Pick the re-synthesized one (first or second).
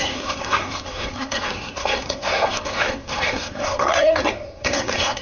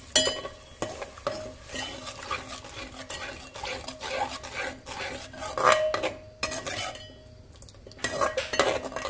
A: first